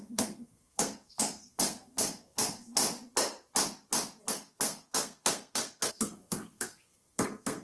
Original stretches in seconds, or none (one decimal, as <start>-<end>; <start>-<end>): 2.8-4.3